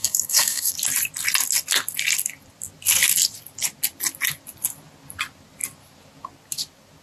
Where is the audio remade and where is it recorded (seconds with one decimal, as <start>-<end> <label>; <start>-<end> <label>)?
0.0-0.7 remade; 0.7-7.0 recorded